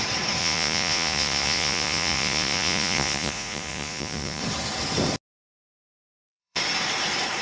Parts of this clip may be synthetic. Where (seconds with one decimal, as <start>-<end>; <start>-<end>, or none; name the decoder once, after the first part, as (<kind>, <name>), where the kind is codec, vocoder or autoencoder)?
0.4-4.4 (vocoder, Vocos); 6.1-6.6